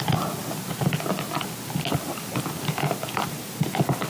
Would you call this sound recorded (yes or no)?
yes